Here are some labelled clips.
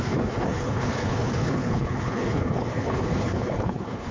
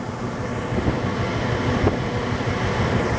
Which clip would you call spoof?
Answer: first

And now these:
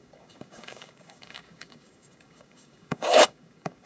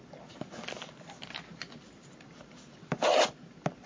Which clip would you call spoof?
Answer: first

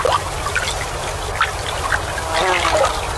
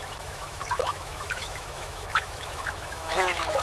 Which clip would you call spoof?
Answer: second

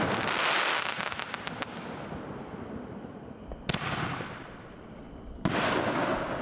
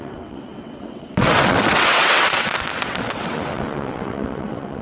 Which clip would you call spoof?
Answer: second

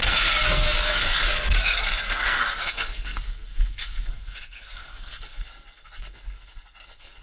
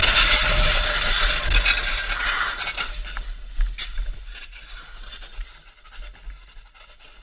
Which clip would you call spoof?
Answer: first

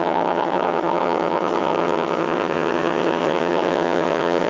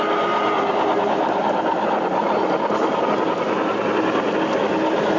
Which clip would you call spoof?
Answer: first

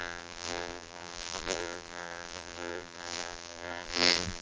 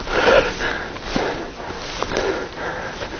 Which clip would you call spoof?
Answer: first